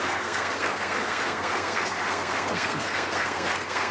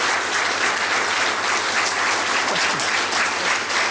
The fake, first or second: first